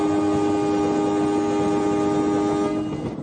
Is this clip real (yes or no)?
yes